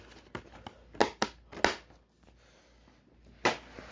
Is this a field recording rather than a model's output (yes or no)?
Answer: yes